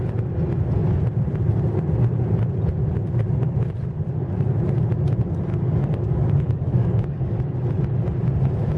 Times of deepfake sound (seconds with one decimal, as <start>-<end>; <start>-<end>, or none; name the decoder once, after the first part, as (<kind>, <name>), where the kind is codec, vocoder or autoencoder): 5.5-7.4 (codec, DAC)